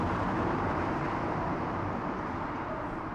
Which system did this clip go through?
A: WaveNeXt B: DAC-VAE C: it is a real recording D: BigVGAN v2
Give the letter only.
D